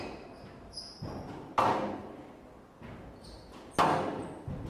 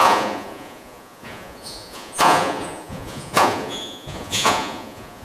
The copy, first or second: second